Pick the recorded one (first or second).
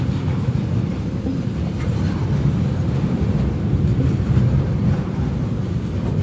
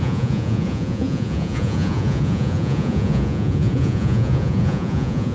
first